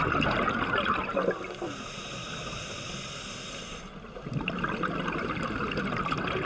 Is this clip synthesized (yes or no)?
no